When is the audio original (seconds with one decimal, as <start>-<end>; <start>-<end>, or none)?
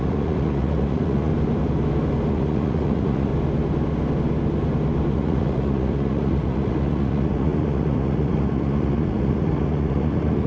1.3-2.3; 3.3-5.1